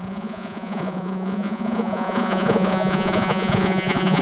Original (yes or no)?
no